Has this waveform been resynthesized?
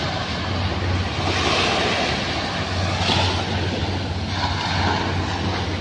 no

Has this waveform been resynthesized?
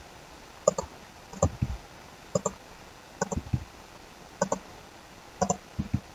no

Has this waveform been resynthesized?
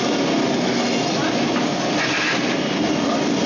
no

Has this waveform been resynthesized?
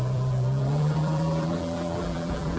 yes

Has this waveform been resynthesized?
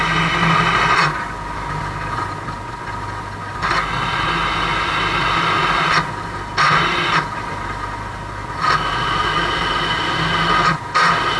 no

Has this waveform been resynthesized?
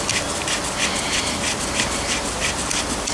no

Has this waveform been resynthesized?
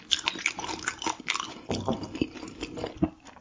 no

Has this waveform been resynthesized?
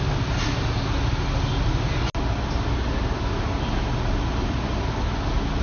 no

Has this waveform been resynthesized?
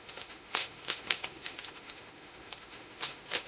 yes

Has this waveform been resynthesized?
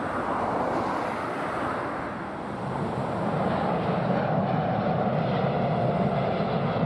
no